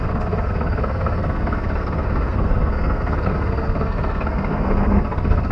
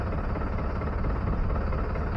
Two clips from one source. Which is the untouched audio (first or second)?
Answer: second